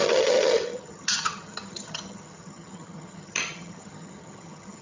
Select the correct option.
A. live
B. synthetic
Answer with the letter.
B